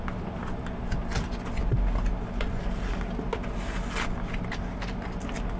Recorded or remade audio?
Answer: recorded